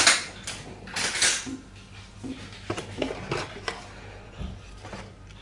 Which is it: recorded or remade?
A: recorded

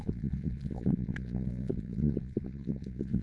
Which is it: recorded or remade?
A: remade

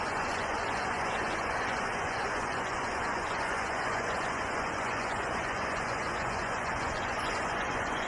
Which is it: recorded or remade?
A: remade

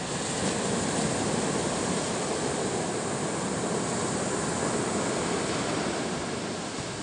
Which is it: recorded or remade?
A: recorded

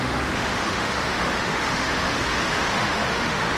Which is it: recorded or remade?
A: remade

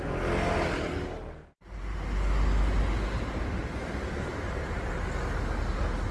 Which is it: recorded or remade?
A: recorded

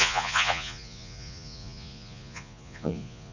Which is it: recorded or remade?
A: remade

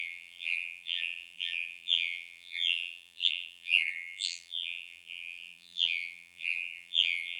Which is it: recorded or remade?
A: remade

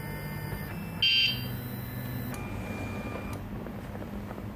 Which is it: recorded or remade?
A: recorded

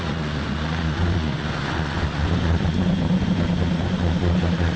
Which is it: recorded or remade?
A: remade